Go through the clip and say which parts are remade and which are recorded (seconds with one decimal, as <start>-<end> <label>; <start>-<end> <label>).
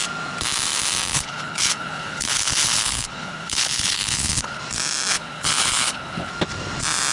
0.0-1.1 recorded; 1.1-4.6 remade; 4.6-5.1 recorded; 5.1-6.3 remade; 6.3-7.1 recorded